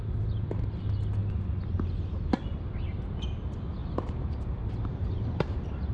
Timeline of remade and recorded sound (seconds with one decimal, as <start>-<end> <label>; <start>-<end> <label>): 0.0-3.8 recorded; 3.8-5.9 remade